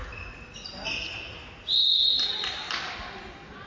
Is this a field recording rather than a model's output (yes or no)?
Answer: yes